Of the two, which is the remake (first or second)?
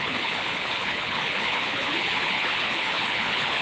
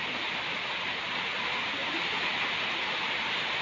first